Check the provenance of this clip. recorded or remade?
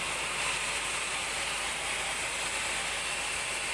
recorded